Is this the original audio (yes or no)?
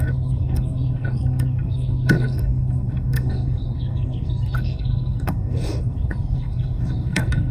no